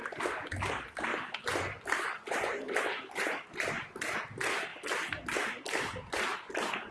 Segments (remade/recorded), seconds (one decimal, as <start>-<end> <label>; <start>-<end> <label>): 0.0-1.1 remade; 1.1-4.2 recorded; 4.2-4.7 remade; 4.7-5.6 recorded; 5.6-6.9 remade